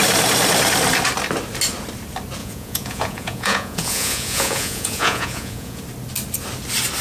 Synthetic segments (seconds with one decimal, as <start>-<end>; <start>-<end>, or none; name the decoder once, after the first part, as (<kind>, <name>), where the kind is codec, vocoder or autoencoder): 2.4-5.8 (vocoder, Vocos)